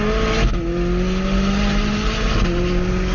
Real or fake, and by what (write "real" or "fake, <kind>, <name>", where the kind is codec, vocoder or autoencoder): real